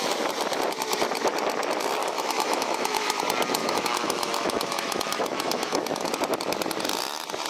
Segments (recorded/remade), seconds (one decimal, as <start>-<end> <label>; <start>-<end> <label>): 0.0-2.0 recorded; 2.0-3.2 remade; 3.2-3.6 recorded; 3.6-6.1 remade; 6.1-7.5 recorded